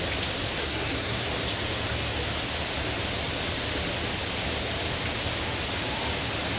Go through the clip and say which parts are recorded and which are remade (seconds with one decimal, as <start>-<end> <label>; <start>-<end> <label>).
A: 0.0-0.6 recorded; 0.6-1.3 remade; 1.3-6.6 recorded